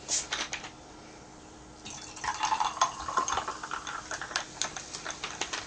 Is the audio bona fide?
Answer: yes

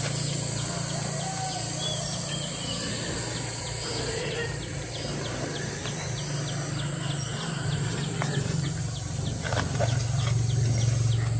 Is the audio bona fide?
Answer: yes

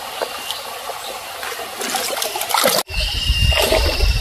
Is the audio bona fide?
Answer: yes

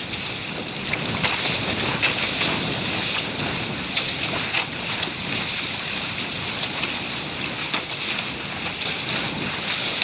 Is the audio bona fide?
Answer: yes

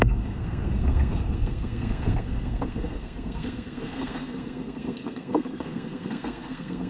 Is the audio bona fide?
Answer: no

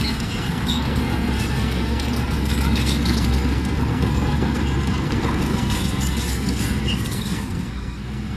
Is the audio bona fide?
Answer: no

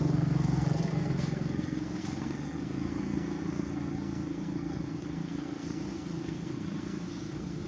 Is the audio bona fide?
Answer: no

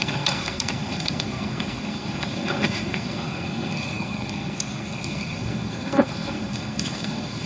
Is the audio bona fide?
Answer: no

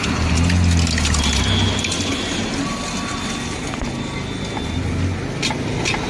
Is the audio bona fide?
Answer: yes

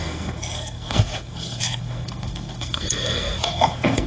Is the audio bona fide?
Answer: no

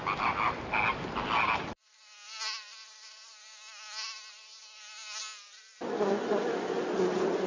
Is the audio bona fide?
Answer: yes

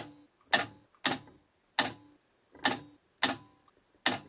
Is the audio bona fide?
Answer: yes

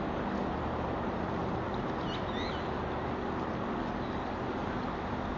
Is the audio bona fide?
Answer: yes